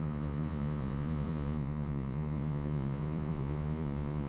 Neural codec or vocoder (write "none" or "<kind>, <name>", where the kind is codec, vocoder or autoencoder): vocoder, Vocos